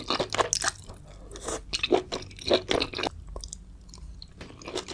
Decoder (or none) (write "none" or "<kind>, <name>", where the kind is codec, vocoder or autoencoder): none